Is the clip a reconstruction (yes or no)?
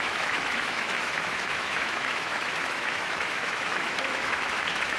yes